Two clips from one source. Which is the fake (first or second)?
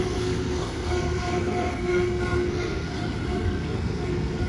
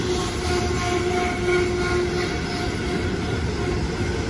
first